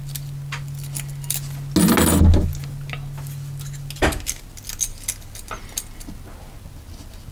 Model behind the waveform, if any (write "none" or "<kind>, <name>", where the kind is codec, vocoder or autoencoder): none